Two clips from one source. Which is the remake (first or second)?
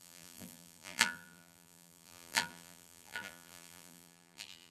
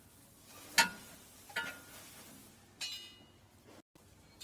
first